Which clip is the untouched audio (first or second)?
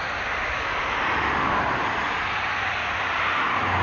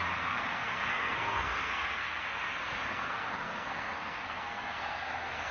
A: first